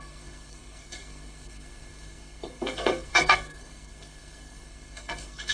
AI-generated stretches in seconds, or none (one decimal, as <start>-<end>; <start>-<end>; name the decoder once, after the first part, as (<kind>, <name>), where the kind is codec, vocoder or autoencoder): 0.0-5.5 (codec, SNAC)